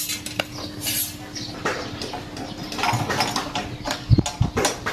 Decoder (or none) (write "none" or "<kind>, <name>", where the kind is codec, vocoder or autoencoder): none